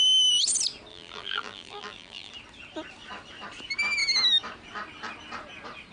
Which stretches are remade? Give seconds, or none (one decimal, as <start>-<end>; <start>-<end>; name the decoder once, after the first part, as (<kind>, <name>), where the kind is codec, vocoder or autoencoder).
0.9-2.3 (vocoder, BigVGAN v2)